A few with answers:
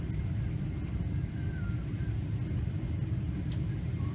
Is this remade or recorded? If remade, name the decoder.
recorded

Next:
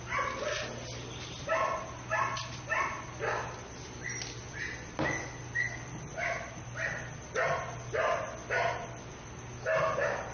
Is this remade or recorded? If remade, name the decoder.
recorded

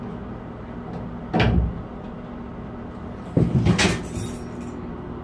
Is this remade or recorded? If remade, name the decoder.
recorded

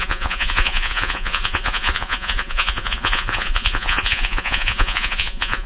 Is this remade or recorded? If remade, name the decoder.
remade, vocoder, Vocos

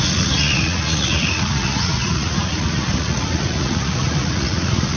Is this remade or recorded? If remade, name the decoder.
remade, vocoder, Vocos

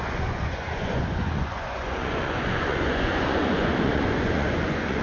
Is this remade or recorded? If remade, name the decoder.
remade, vocoder, Vocos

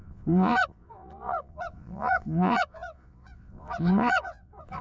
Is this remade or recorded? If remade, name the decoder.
remade, vocoder, Vocos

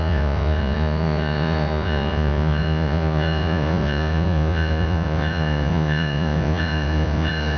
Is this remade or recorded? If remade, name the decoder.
remade, vocoder, Vocos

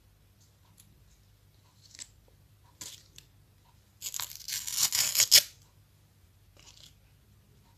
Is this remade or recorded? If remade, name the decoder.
recorded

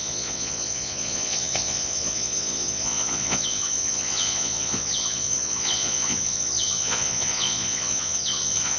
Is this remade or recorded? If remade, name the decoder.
remade, vocoder, Vocos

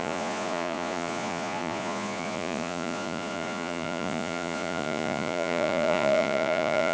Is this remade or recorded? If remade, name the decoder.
remade, vocoder, Vocos